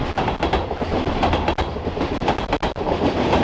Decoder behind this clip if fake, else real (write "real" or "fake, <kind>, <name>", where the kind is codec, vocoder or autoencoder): real